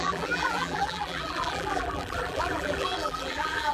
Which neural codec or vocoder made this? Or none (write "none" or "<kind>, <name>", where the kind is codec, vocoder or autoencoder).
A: vocoder, BigVGAN v2